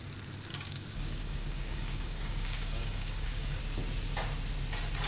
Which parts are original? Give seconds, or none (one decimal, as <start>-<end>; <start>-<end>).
0.0-0.5; 3.6-5.1